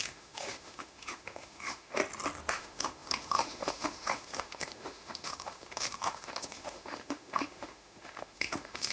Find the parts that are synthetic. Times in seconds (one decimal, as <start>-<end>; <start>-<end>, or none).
0.0-2.0; 2.5-8.9